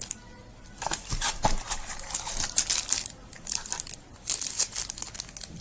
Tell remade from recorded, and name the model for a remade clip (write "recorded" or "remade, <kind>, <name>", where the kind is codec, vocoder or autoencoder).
recorded